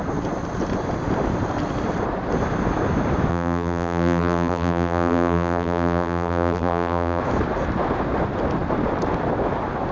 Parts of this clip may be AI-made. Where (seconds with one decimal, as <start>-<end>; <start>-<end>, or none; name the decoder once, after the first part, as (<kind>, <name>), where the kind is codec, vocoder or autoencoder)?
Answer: 3.3-7.2 (vocoder, BigVGAN v2)